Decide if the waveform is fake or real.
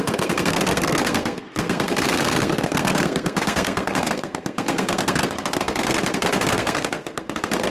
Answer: fake